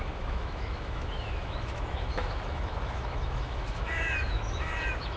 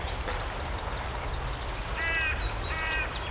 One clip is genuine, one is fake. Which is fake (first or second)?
first